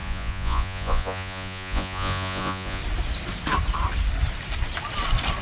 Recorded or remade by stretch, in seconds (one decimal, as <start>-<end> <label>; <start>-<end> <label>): 0.0-2.8 remade; 2.8-5.4 recorded